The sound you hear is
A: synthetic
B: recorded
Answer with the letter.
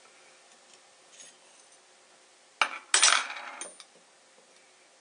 B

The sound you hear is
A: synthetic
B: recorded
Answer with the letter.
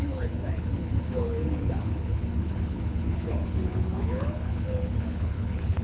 A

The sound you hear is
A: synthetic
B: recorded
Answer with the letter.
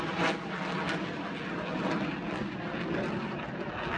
B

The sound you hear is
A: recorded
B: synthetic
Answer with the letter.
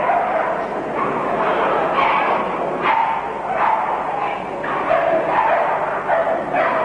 A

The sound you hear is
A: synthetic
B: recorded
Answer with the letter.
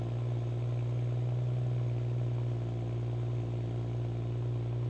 B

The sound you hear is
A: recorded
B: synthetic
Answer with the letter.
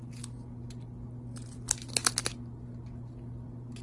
A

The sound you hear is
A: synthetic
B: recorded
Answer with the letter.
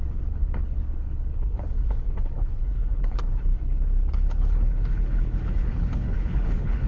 A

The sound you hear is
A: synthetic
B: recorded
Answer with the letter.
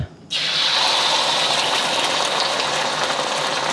B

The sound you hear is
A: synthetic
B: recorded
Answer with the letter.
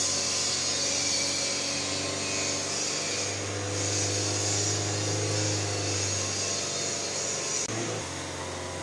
B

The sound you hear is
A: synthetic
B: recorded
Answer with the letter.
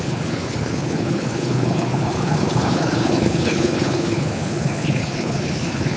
A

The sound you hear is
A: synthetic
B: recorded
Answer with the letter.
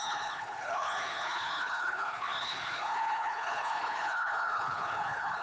A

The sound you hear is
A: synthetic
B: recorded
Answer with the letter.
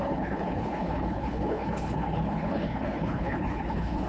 A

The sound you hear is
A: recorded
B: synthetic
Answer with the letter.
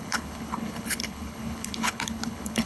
B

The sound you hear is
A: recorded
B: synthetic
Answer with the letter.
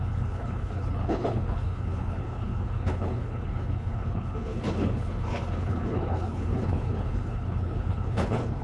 B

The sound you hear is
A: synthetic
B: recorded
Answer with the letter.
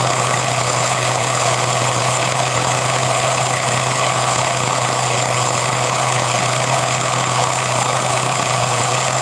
A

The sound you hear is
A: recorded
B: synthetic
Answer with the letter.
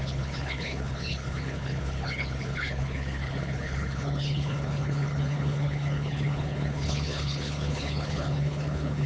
B